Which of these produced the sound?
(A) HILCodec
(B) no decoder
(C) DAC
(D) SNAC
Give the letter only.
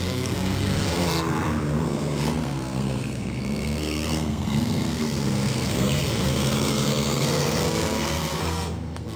D